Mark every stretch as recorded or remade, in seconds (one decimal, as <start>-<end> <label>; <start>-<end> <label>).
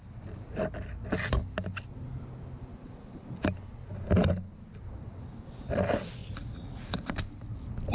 0.0-6.2 recorded; 6.2-7.0 remade; 7.0-7.9 recorded